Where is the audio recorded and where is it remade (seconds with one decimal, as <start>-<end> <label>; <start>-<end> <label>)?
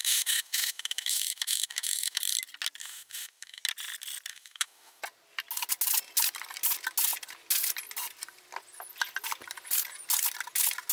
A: 0.0-2.2 remade; 2.2-2.8 recorded; 2.8-3.6 remade; 3.6-4.3 recorded; 4.3-5.0 remade; 5.0-10.9 recorded